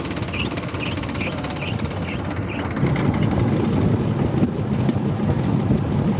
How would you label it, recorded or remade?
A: recorded